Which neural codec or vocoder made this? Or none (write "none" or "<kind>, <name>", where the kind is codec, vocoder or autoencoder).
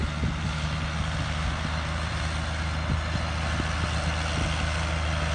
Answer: none